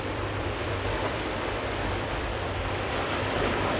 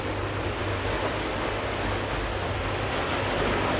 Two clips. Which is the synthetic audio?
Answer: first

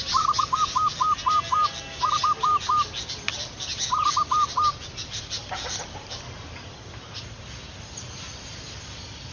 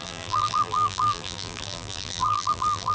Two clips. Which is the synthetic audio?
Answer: second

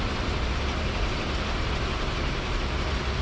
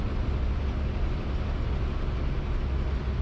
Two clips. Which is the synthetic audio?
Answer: first